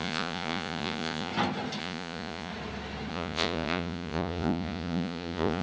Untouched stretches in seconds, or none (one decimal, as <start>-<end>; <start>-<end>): 1.3-1.8; 2.5-3.1

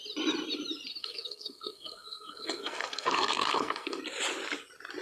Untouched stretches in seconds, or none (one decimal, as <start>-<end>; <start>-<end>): 0.0-1.0; 4.0-5.0

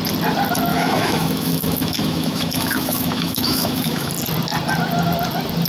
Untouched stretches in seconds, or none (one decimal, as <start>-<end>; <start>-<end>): 0.0-0.7; 4.1-5.7

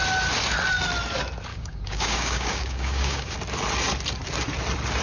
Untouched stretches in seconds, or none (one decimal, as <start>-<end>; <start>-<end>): 0.0-1.5; 3.3-5.0

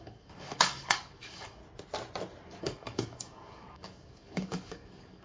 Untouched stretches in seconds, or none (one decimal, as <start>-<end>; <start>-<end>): 1.6-2.6